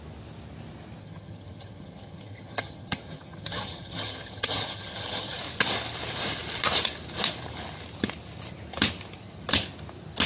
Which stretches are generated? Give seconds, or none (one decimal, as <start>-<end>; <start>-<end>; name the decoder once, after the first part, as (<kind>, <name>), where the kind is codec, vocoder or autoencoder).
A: 1.0-5.4 (vocoder, HiFi-GAN)